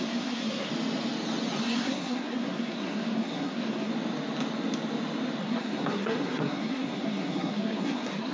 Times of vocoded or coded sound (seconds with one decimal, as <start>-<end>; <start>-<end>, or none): 0.0-0.7; 1.6-3.9; 5.4-8.3